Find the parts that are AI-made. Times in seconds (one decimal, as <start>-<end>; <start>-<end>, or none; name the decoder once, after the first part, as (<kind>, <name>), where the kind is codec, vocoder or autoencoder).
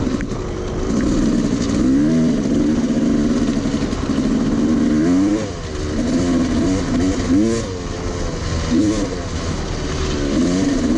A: none